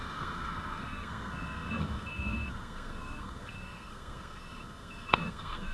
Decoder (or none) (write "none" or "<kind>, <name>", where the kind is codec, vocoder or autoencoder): codec, SNAC